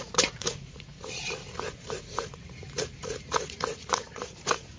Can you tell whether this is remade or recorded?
remade